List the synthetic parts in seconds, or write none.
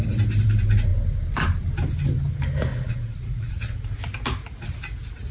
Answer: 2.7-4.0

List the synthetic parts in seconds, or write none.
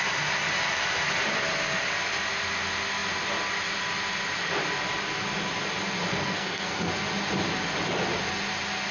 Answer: 6.1-6.9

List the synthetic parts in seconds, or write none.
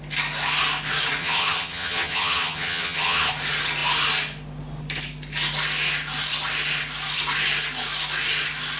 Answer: 1.2-3.3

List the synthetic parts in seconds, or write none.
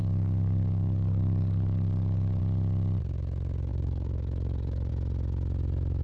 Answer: 0.0-2.4; 3.7-4.9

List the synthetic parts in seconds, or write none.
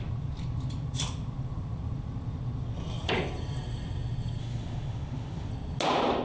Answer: 4.4-5.5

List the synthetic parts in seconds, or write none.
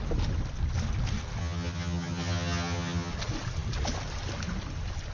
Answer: 1.4-3.1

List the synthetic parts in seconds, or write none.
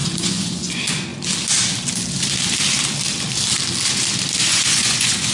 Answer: 0.0-1.1; 4.3-5.3